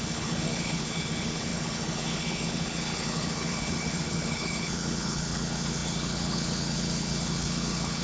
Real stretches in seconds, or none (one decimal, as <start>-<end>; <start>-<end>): none